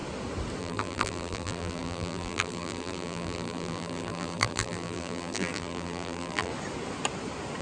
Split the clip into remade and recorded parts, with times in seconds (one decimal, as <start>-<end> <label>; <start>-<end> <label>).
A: 0.0-0.6 recorded; 0.6-6.5 remade; 6.5-7.6 recorded